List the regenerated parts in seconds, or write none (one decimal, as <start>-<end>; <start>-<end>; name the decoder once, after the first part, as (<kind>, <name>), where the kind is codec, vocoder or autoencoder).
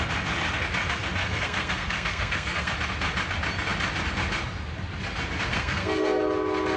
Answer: 1.2-2.7 (codec, SNAC); 5.5-6.2